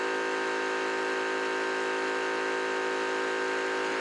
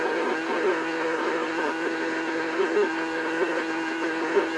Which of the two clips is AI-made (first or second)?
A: second